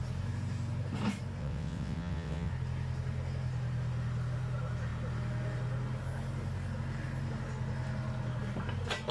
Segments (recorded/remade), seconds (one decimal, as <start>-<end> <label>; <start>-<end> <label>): 0.0-1.4 recorded; 1.4-2.5 remade; 2.5-9.1 recorded